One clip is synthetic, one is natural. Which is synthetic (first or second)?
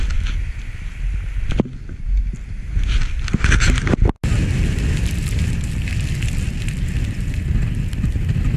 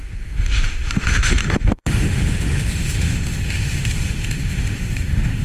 second